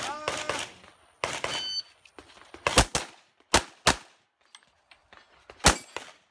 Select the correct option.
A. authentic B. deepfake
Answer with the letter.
A